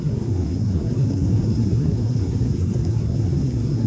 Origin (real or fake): fake